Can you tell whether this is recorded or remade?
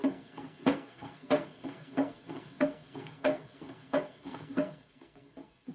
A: remade